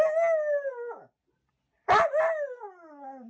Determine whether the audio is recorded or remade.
recorded